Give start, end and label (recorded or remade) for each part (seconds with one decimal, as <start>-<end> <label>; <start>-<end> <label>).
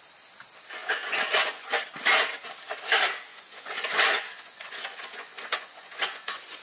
0.0-0.8 recorded; 0.8-1.8 remade; 1.8-3.3 recorded; 3.3-6.6 remade